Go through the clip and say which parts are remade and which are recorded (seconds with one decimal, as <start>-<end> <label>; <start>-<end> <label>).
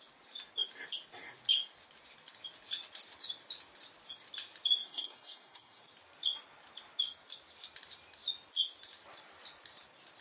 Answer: 0.0-4.8 recorded; 4.8-5.8 remade; 5.8-10.2 recorded